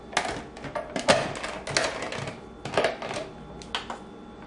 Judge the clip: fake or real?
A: real